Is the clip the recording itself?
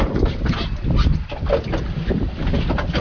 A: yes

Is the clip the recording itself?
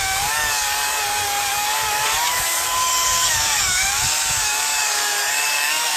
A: no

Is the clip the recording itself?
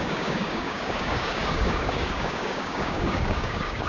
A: no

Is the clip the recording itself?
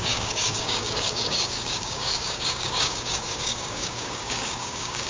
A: no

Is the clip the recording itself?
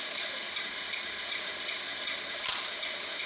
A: yes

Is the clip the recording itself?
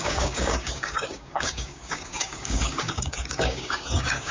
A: no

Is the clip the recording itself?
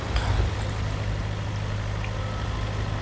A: yes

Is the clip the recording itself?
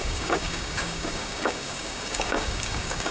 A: no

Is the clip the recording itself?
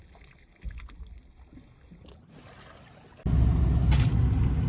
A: yes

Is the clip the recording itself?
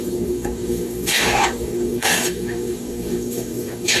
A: no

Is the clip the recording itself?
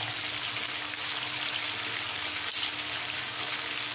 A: yes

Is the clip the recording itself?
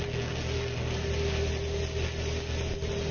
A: yes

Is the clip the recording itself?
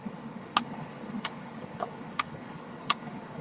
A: no